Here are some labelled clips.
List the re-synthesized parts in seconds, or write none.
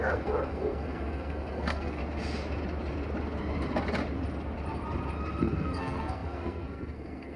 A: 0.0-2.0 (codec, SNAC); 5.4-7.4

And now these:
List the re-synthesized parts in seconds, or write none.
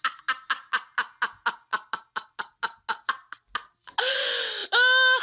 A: none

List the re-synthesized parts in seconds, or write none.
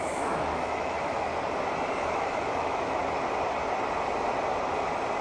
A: 0.0-1.3 (autoencoder, DAC-VAE); 2.0-3.0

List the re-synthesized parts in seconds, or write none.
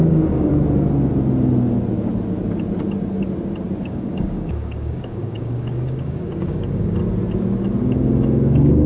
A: 0.0-0.5 (codec, DAC); 3.8-7.0; 7.8-8.9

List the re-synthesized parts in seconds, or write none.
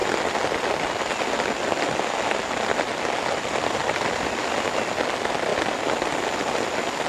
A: none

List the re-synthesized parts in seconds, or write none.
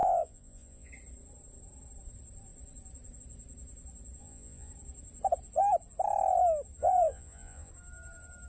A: 0.0-0.9 (vocoder, Vocos); 4.2-4.7; 6.8-7.7